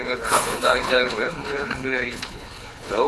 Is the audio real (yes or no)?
no